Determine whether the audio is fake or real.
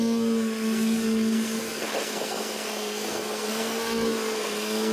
fake